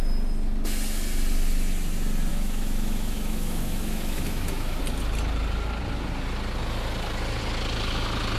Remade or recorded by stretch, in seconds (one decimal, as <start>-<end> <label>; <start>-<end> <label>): 0.0-2.3 recorded; 2.3-4.8 remade; 4.8-8.4 recorded